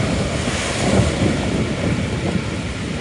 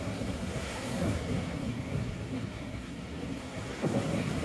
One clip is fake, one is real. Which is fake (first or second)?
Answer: second